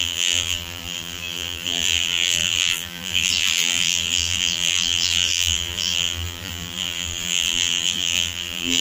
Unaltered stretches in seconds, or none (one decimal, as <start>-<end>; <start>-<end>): none